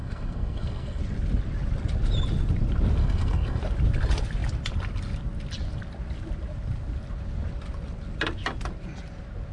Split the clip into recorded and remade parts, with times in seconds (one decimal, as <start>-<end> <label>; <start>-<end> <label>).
0.0-1.0 remade; 1.0-3.0 recorded; 3.0-3.6 remade; 3.6-9.5 recorded